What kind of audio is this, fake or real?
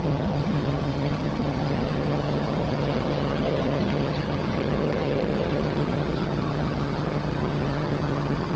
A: fake